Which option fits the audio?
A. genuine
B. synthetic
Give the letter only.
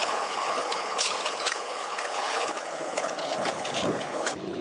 B